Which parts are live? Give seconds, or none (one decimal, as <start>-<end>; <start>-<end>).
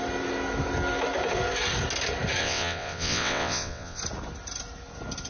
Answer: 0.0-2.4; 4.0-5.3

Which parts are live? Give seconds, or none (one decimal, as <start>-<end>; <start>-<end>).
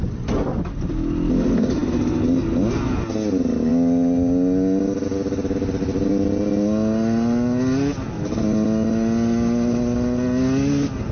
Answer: 0.0-11.1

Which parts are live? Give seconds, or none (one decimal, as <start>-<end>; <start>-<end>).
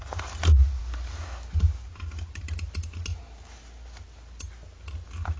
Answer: 0.0-5.4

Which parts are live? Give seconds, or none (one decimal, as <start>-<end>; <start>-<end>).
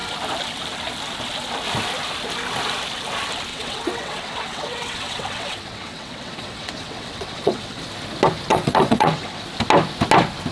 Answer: 0.0-3.5; 7.8-8.5; 9.4-10.5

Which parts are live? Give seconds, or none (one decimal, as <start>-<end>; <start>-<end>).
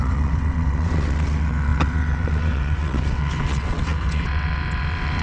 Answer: none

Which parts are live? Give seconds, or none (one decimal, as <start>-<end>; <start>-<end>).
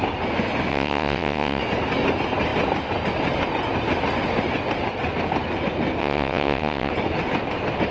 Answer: 0.0-0.7; 1.6-6.0; 6.9-7.9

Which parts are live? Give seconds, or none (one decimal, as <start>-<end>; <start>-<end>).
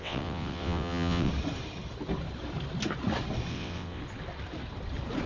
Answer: 1.3-3.5; 4.0-5.3